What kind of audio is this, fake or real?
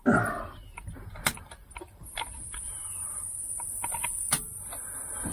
fake